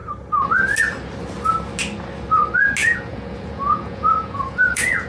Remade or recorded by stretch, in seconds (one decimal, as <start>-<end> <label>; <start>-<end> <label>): 0.0-2.8 recorded; 2.8-5.1 remade